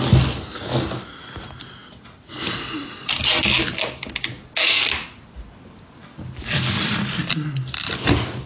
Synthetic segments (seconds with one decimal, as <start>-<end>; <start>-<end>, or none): none